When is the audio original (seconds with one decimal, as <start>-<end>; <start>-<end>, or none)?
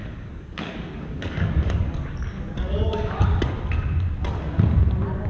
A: 3.2-5.3